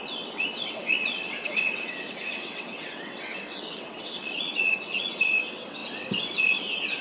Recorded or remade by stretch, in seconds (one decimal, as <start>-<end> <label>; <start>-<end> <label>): 0.0-7.0 remade